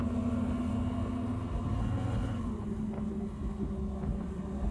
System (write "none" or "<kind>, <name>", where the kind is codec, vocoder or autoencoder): none